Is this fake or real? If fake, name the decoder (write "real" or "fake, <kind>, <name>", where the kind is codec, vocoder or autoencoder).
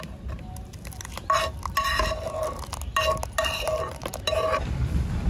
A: real